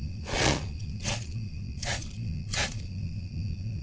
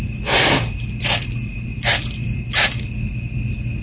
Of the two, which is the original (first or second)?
second